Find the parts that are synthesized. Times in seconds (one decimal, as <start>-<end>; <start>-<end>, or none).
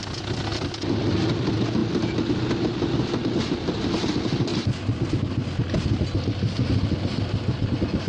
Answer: none